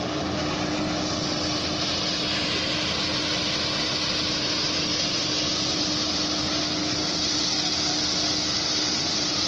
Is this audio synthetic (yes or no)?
no